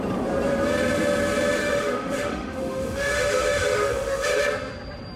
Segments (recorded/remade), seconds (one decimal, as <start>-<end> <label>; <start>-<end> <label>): 0.0-1.6 recorded; 1.6-4.4 remade; 4.4-5.2 recorded